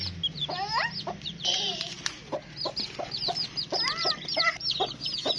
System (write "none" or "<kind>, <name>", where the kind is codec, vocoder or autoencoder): none